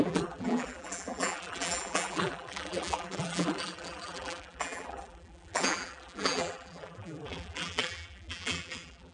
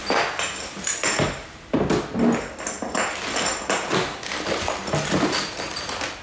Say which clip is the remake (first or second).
first